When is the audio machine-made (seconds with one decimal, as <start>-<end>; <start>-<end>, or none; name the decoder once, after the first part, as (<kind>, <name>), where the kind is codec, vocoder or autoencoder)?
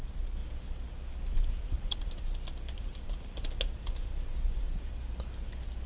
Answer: none